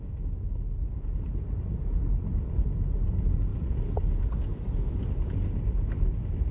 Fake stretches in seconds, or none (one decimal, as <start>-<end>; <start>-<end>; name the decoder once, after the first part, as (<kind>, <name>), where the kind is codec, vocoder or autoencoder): none